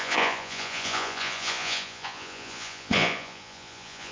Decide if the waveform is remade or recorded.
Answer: remade